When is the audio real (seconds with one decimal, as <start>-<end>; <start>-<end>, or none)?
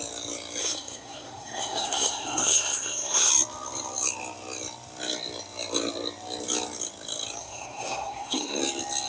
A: 0.0-0.6; 3.3-7.4; 8.6-9.1